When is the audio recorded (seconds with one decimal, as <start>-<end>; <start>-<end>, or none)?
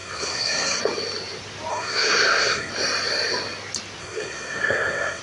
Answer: 0.8-1.7; 2.7-4.0